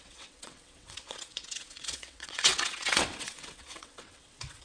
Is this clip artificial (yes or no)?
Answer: yes